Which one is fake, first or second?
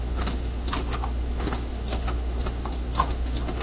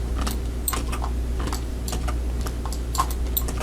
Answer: first